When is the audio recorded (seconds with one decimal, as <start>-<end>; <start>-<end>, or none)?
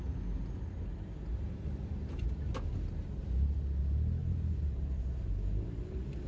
0.0-1.3; 2.5-4.2; 5.1-6.3